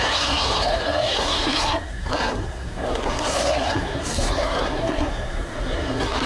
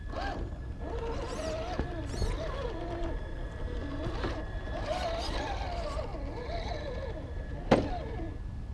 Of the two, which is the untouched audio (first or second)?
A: second